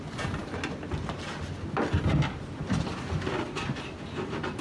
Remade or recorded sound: recorded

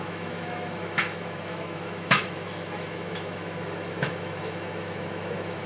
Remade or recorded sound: remade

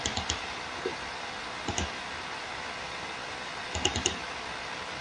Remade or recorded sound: recorded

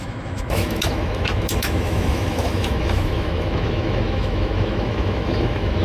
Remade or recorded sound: remade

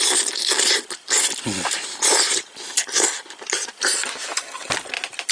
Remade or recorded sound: recorded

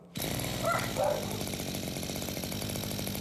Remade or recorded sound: recorded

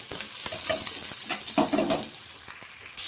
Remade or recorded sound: recorded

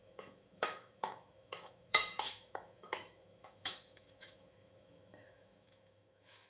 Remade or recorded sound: remade